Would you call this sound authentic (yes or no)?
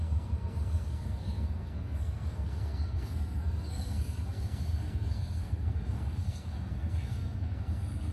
no